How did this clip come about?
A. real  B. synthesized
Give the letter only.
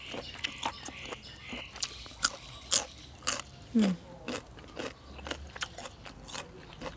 A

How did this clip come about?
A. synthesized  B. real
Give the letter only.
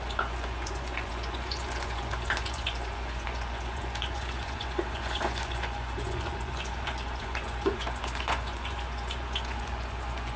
A